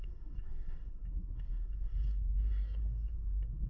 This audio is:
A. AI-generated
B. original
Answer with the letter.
A